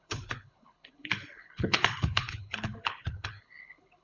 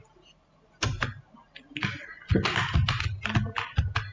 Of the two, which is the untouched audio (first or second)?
second